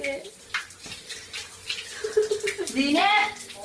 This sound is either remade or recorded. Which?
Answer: recorded